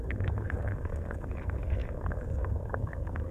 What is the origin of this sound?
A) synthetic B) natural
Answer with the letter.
A